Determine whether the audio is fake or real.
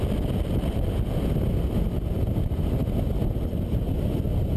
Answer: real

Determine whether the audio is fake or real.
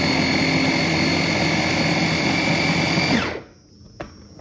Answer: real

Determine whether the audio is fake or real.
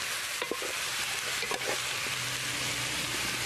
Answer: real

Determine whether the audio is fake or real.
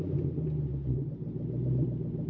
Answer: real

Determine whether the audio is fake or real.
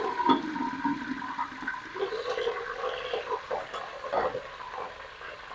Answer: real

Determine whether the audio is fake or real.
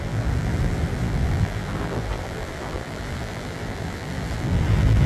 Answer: fake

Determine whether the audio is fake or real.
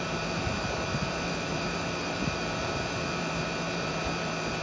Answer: fake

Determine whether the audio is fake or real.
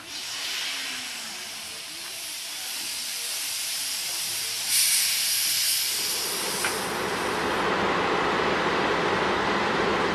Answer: fake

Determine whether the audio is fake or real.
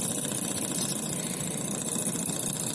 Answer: fake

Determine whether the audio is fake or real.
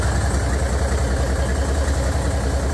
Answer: real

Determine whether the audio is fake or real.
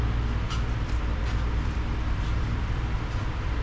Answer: fake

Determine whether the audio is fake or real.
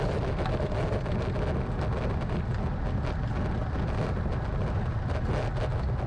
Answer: real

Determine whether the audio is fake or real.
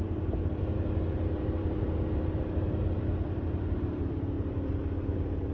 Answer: fake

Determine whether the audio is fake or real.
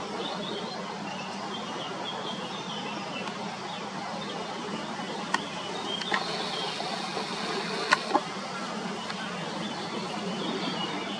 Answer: real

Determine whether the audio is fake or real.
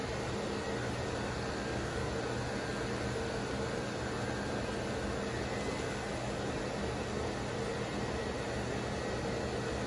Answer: real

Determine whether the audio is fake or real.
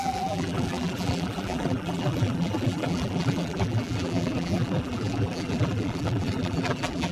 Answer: fake